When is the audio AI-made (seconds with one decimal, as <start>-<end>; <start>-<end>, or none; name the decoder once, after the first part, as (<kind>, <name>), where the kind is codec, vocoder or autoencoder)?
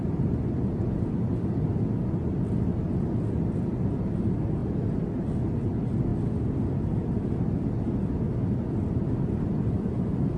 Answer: 4.6-5.2 (vocoder, BigVGAN v2)